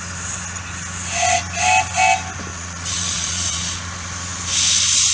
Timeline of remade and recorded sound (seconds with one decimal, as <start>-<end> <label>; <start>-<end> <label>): 0.0-2.5 recorded; 2.5-3.7 remade; 3.7-5.1 recorded